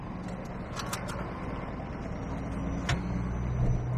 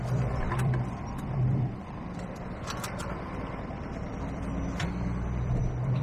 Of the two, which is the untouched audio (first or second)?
first